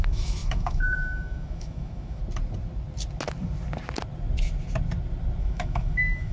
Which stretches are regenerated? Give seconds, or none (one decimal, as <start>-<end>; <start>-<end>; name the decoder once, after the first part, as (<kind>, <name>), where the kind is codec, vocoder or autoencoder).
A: 0.0-2.2 (autoencoder, DAC-VAE); 5.4-6.3